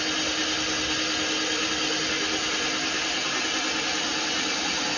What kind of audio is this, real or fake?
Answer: real